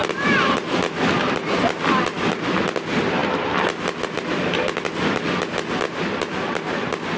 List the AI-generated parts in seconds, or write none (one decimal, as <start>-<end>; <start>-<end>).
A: none